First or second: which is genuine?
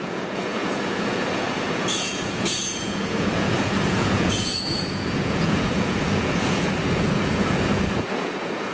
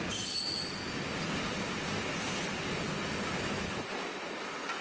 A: second